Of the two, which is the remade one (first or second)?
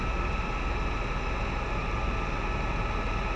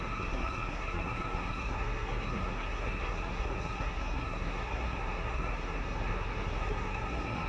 second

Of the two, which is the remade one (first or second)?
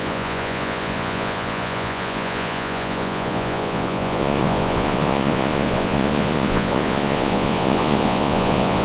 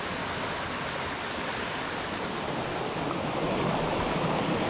first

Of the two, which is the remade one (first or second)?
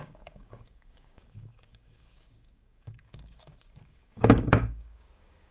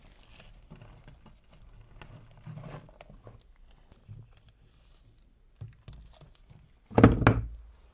first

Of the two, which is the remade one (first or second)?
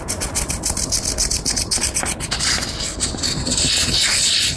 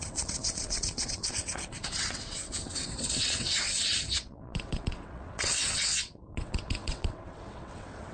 second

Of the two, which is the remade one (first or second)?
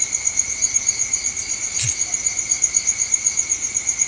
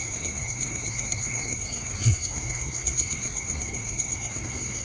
second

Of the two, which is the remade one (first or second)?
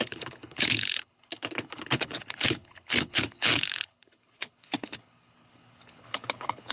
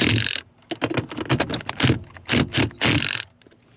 first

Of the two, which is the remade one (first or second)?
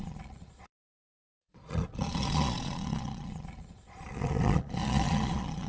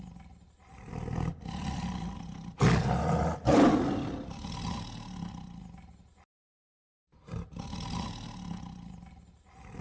first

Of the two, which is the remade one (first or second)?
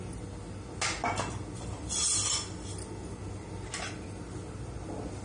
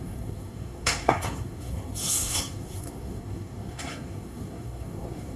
second